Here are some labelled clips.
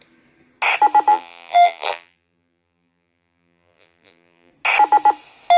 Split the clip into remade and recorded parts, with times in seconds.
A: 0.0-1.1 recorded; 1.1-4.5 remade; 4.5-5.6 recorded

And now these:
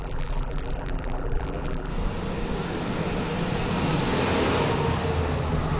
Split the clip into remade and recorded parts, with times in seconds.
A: 0.0-1.9 remade; 1.9-5.8 recorded

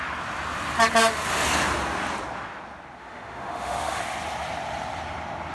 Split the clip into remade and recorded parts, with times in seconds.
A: 0.0-3.0 recorded; 3.0-4.0 remade; 4.0-5.5 recorded

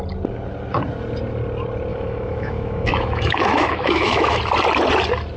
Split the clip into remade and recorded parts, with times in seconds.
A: 0.0-1.9 recorded; 1.9-4.4 remade; 4.4-5.4 recorded